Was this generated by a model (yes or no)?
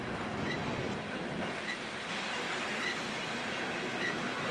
no